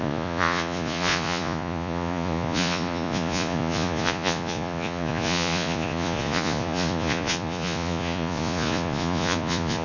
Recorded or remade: remade